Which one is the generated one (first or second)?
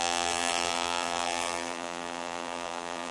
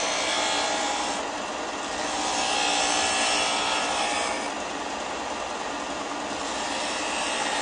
first